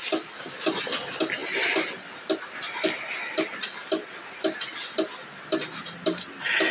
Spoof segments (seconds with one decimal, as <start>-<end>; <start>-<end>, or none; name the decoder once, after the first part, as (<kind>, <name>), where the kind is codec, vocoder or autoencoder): none